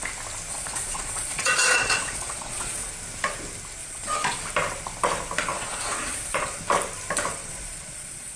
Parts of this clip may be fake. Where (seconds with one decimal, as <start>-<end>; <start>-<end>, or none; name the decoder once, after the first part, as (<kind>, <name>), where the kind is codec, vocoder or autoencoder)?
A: 0.5-2.9 (vocoder, Vocos); 3.8-4.4; 5.5-6.6; 7.3-8.4

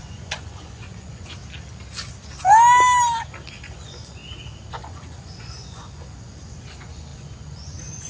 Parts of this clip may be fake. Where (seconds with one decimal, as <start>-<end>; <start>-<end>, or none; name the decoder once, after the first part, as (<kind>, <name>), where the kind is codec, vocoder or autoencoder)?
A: 0.0-1.4 (vocoder, Vocos); 3.6-4.2; 4.7-8.1

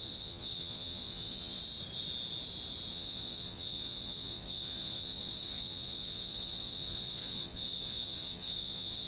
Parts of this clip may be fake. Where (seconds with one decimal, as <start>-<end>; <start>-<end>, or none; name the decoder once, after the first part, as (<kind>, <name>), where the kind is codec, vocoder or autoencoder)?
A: 0.0-1.6 (vocoder, Vocos); 2.9-9.1

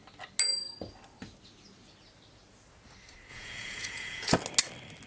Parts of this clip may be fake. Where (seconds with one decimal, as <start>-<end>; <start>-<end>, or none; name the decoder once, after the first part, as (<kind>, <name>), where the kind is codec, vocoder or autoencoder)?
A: 3.3-4.3 (vocoder, Vocos)